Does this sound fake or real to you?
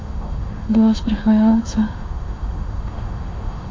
fake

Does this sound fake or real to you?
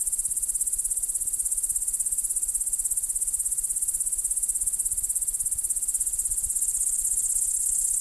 real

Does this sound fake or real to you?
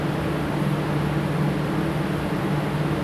real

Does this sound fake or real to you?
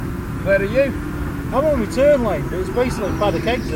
real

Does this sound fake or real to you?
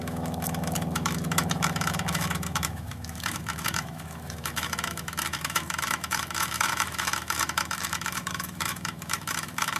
fake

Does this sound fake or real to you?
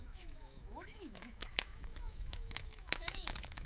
fake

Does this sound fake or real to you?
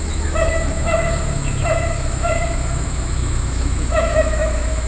fake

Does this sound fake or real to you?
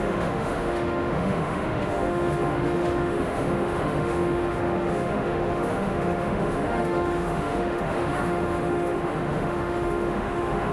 fake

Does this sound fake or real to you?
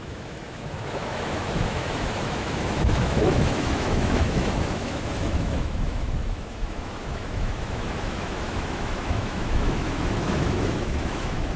fake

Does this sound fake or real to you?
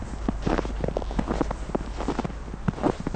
real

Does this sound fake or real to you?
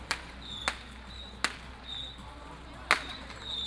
real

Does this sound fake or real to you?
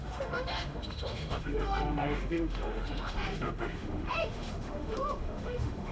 fake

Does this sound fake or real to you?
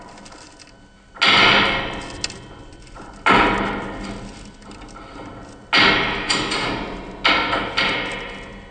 real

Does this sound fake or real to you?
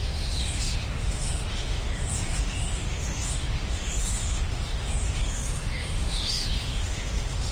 fake